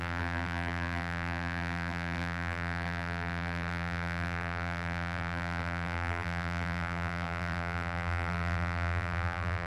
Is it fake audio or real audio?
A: fake